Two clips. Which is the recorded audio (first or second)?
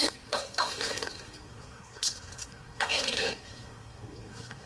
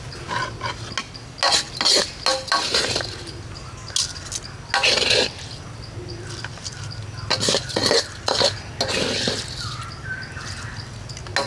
second